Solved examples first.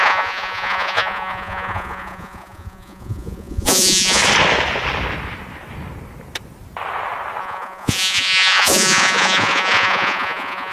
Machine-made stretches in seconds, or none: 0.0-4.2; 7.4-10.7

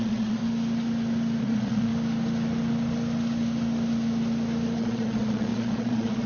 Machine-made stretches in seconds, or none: 0.0-0.4; 1.4-1.9; 4.8-6.3

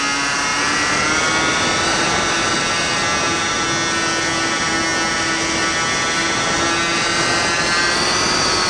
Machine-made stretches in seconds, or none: none

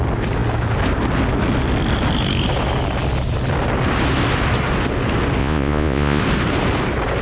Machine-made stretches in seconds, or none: 5.4-6.2

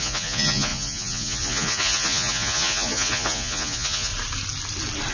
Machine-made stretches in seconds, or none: 0.0-4.1

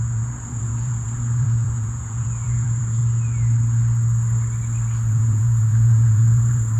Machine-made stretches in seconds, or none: 0.0-3.0; 5.1-6.8